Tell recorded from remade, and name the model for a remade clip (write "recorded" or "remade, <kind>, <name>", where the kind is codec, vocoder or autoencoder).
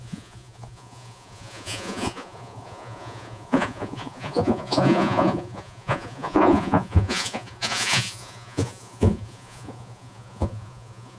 remade, vocoder, Vocos